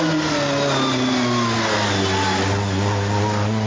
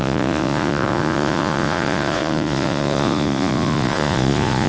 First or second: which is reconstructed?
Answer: second